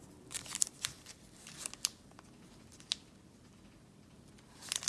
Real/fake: fake